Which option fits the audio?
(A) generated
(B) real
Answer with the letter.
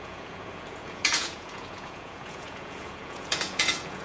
A